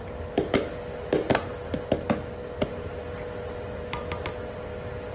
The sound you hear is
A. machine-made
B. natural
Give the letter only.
B